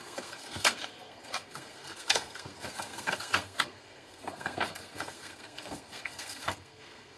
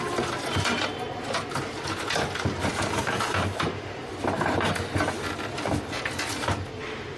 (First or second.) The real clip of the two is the second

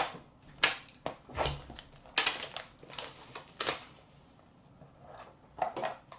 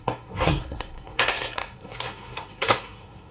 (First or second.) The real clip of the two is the first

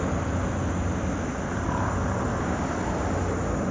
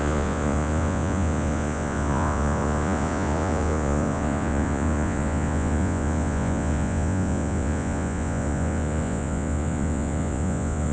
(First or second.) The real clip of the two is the first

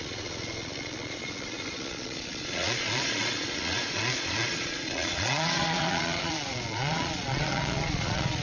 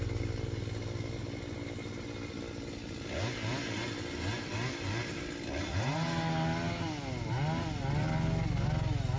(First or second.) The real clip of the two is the second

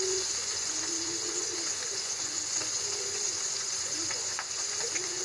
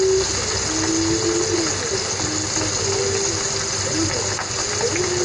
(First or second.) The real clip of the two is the second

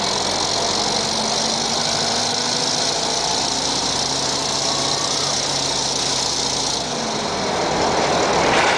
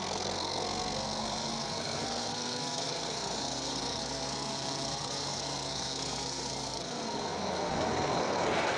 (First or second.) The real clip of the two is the first